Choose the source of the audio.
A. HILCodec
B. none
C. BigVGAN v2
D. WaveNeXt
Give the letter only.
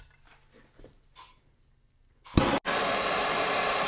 B